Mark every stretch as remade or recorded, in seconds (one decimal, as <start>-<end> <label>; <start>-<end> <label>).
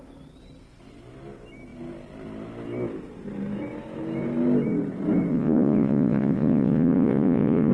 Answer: 0.0-5.3 recorded; 5.3-7.7 remade